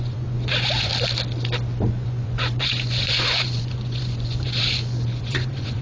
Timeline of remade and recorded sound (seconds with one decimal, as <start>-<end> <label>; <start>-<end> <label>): 0.0-0.9 remade; 0.9-1.9 recorded; 1.9-5.8 remade